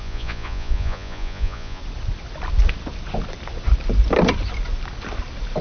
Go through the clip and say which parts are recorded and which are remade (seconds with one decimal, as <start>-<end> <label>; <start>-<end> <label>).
0.0-1.8 remade; 1.8-5.6 recorded